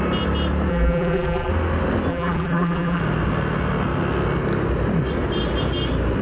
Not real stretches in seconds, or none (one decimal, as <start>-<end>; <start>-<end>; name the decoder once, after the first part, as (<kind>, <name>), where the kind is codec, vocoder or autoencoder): 0.7-1.5 (vocoder, BigVGAN v2); 2.1-3.0